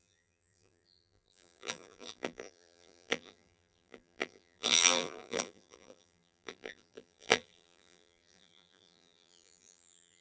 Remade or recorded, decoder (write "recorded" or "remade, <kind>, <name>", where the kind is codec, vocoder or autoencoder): remade, vocoder, BigVGAN v2